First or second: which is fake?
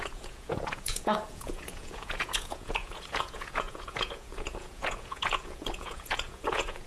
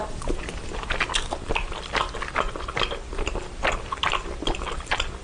first